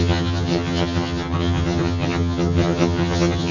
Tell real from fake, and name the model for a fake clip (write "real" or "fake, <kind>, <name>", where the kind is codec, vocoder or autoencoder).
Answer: fake, vocoder, HiFi-GAN